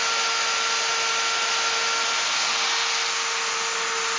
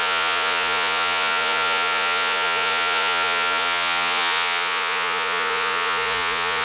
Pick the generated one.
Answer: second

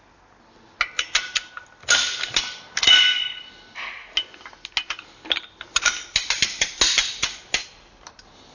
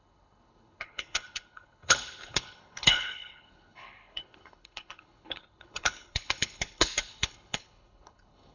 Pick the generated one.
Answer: second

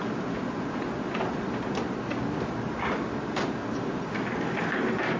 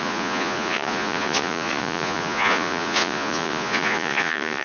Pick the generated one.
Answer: second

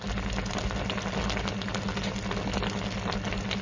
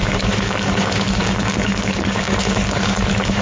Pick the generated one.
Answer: second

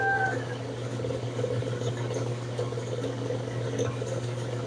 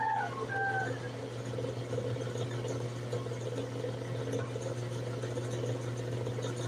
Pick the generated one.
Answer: first